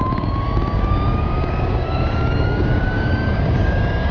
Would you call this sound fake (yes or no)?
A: yes